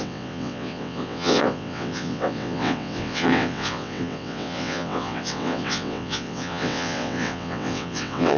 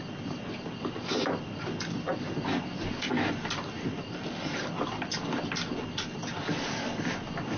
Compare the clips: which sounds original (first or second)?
second